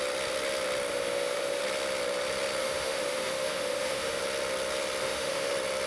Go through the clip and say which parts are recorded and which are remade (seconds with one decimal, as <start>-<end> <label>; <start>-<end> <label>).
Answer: 0.0-0.9 recorded; 0.9-1.6 remade; 1.6-2.6 recorded; 2.6-4.2 remade; 4.2-5.0 recorded; 5.0-5.5 remade; 5.5-5.9 recorded